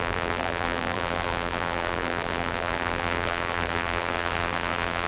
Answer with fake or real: fake